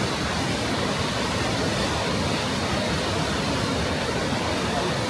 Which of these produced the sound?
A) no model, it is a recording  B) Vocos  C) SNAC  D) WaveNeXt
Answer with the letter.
A